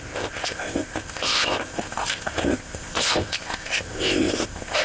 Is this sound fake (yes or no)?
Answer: yes